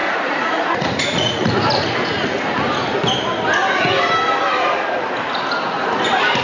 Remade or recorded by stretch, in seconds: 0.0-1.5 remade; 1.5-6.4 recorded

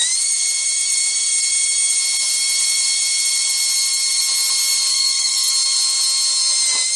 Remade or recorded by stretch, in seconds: 0.0-4.9 recorded; 4.9-5.5 remade; 5.5-7.0 recorded

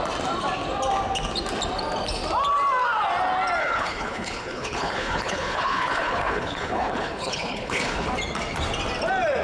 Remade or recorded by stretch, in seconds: 0.0-3.6 recorded; 3.6-8.1 remade; 8.1-9.4 recorded

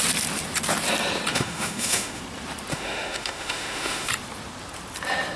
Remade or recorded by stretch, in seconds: 0.0-1.3 recorded; 1.3-2.2 remade; 2.2-2.7 recorded; 2.7-4.1 remade; 4.1-5.4 recorded

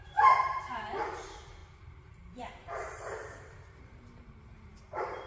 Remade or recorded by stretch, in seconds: 0.0-5.3 remade

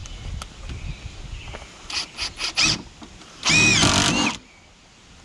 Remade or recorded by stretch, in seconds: 0.0-5.2 recorded

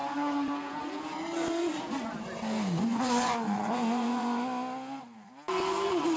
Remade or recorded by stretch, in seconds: 0.0-1.0 remade; 1.0-2.9 recorded; 2.9-4.4 remade; 4.4-6.2 recorded